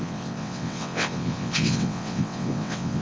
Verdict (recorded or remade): remade